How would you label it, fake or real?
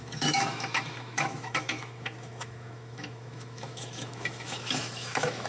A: fake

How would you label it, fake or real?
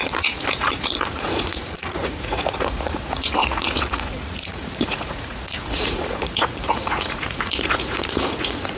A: fake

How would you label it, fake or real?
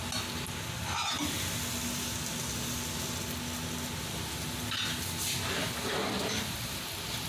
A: real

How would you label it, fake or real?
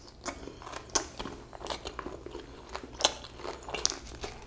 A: real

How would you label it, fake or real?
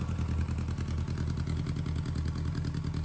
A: real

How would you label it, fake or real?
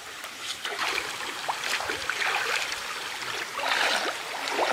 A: real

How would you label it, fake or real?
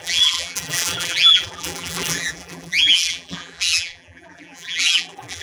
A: fake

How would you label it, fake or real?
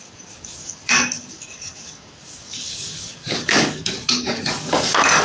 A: fake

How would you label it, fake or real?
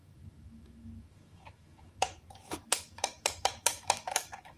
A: fake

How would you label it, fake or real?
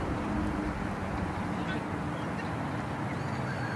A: fake